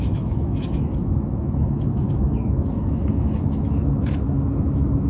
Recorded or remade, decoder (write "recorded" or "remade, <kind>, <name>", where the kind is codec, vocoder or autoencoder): remade, autoencoder, DAC-VAE